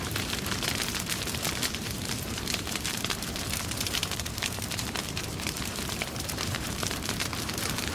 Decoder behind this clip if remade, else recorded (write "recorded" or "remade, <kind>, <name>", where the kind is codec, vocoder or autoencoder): remade, vocoder, BigVGAN v2